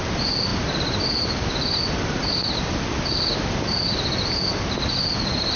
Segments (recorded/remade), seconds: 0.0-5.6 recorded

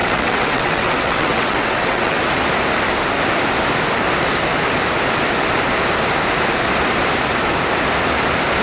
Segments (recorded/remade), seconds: 0.0-2.2 remade; 2.2-8.6 recorded

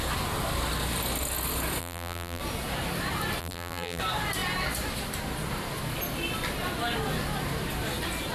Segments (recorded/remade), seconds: 0.0-1.8 recorded; 1.8-2.4 remade; 2.4-3.4 recorded; 3.4-4.0 remade; 4.0-8.3 recorded

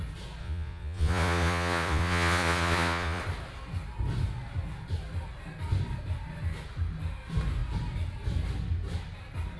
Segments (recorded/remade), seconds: 0.0-0.4 recorded; 0.4-3.2 remade; 3.2-9.6 recorded

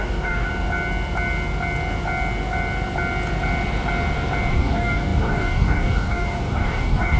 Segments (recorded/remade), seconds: 0.0-0.5 remade; 0.5-4.5 recorded; 4.5-7.2 remade